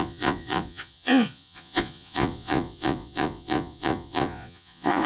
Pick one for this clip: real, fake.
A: fake